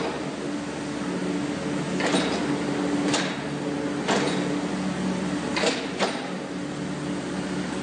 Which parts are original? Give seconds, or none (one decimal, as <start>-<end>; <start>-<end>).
0.0-7.8